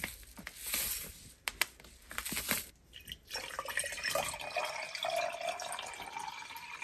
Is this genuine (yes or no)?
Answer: yes